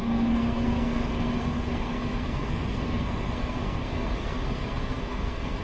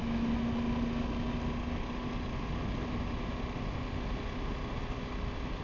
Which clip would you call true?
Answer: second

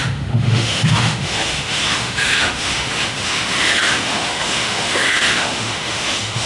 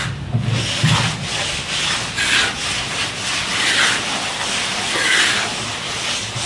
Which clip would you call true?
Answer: second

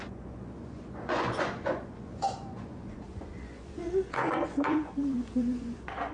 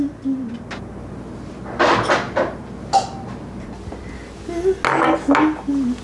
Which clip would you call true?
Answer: second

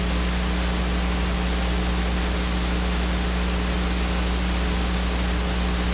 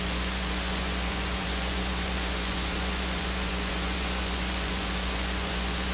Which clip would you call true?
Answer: first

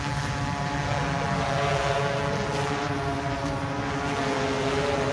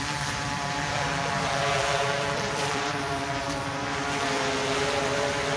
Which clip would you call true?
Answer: first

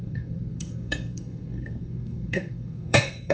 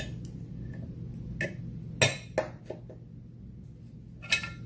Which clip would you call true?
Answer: second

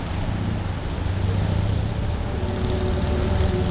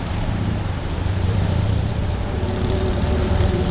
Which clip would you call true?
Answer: first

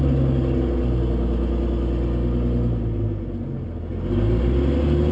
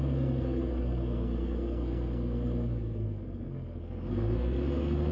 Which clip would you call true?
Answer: first